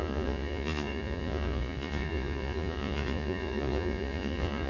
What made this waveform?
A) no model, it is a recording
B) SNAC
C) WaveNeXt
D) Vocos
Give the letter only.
D